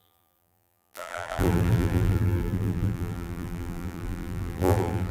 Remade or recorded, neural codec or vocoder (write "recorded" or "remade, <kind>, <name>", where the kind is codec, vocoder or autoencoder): remade, vocoder, BigVGAN v2